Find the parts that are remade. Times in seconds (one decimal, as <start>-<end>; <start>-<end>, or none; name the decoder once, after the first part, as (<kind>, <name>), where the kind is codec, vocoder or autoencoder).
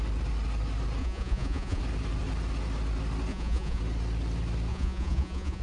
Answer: 1.0-1.8 (vocoder, Vocos); 3.3-3.8; 4.7-5.6